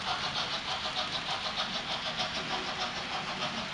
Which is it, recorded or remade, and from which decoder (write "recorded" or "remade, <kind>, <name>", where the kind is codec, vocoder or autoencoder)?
recorded